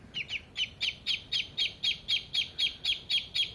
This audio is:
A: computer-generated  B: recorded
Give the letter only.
B